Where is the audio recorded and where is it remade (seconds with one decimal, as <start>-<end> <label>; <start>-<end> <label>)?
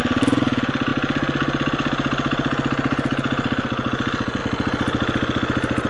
0.0-5.9 recorded